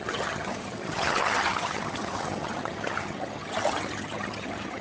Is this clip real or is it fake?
fake